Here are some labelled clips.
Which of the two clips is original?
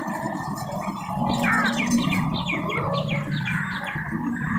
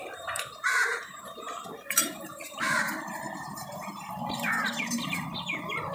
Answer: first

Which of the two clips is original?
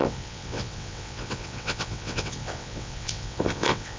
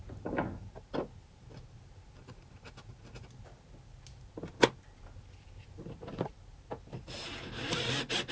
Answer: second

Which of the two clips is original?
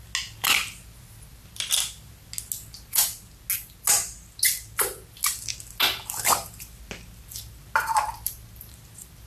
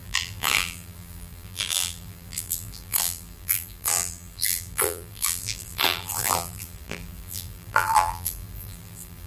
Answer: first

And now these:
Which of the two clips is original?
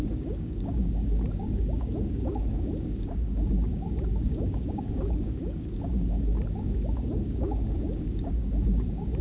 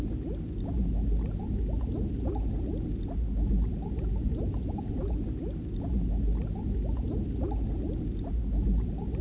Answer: second